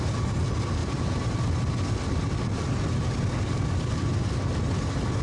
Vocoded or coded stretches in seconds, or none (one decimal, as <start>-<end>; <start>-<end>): 0.8-1.3